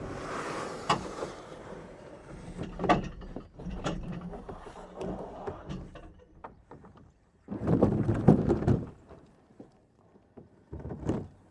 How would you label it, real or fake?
fake